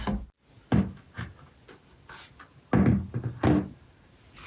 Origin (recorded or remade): recorded